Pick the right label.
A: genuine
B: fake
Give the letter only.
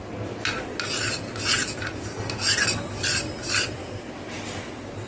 A